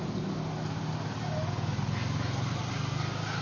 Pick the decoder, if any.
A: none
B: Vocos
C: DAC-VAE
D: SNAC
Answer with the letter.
A